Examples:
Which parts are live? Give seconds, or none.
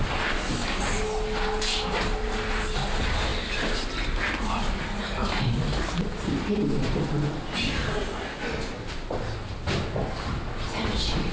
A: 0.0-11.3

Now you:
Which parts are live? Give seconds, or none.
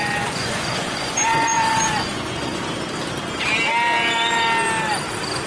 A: 2.6-5.5